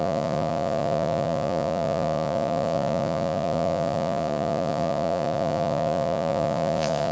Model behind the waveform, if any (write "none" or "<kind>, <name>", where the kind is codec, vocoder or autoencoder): vocoder, Vocos